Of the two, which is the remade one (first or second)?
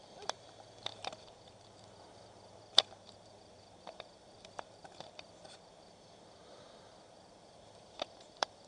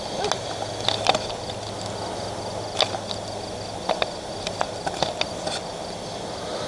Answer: first